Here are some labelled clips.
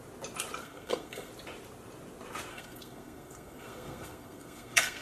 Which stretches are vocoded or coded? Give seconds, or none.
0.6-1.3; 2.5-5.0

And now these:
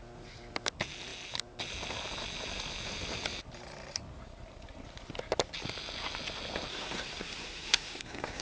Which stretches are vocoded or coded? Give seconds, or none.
6.7-8.4